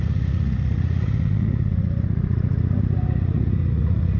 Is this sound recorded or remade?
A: remade